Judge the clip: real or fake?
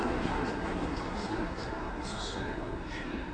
fake